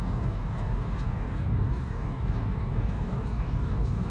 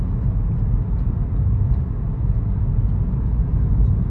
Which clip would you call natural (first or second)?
second